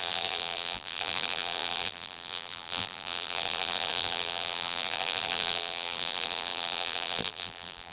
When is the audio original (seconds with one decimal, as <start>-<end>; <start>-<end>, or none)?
none